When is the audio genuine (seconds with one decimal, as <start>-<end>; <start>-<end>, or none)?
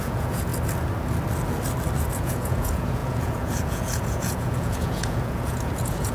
0.5-2.1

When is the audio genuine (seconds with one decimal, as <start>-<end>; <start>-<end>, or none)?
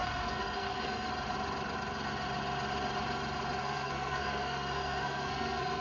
1.1-3.6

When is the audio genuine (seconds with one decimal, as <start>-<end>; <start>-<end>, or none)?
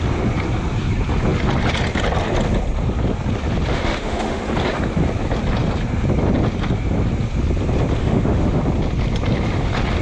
0.0-3.7; 4.4-8.0; 8.6-10.0